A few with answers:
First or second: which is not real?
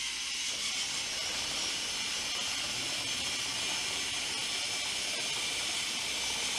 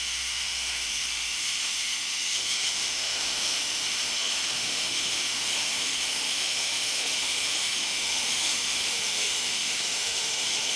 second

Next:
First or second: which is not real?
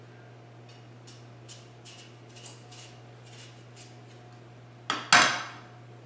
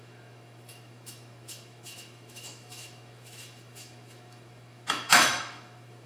second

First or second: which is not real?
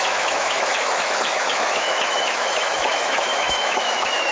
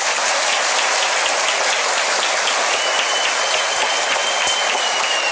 first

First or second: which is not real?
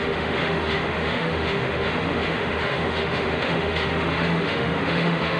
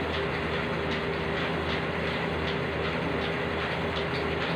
first